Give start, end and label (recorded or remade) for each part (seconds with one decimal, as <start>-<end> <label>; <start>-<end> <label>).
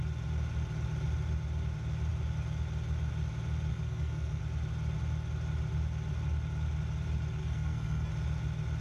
0.0-3.7 recorded; 3.7-4.4 remade; 4.4-7.4 recorded; 7.4-8.1 remade; 8.1-8.8 recorded